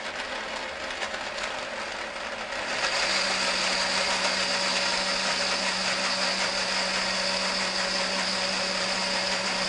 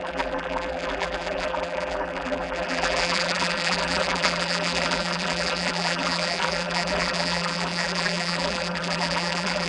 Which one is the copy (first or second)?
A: second